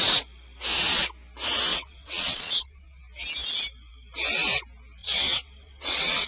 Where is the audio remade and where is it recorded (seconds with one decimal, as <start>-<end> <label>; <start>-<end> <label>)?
0.0-1.7 recorded; 1.7-3.0 remade; 3.0-5.0 recorded; 5.0-6.3 remade